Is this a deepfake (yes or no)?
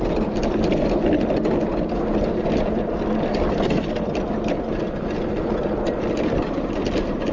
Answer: no